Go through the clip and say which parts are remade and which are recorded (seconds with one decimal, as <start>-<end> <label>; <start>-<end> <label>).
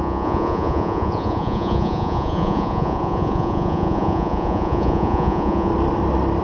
0.0-5.7 remade; 5.7-6.4 recorded